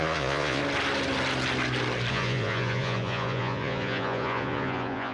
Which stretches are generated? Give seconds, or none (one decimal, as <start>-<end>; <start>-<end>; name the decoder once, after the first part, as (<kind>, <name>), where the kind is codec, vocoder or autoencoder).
0.0-0.6 (vocoder, Vocos); 2.1-5.1